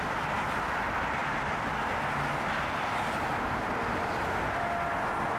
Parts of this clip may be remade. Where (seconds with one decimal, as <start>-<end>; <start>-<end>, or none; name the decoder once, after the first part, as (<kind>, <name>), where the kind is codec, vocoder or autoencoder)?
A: none